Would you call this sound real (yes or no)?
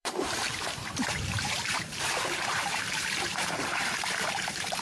no